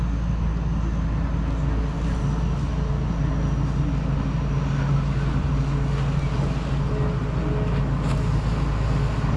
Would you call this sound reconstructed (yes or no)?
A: no